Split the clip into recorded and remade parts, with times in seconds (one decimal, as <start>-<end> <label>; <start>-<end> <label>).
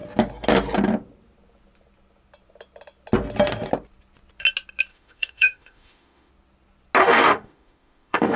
0.0-4.9 recorded; 4.9-6.3 remade; 6.3-7.0 recorded; 7.0-8.4 remade